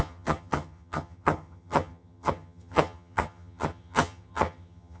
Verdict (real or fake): fake